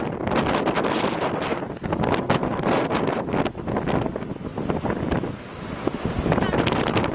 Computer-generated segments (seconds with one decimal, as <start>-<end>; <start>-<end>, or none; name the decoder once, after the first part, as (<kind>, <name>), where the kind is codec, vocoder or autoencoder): 4.5-6.6 (vocoder, BigVGAN v2)